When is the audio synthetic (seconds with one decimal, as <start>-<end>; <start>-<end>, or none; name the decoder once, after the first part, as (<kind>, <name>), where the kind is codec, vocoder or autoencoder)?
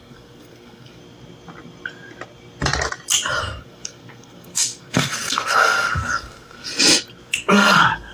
0.0-1.0 (codec, SNAC); 3.4-6.7; 7.3-8.1